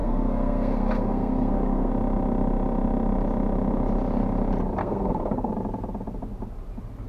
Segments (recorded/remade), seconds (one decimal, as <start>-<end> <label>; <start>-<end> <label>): 0.0-1.9 remade; 1.9-4.8 recorded; 4.8-5.5 remade; 5.5-7.1 recorded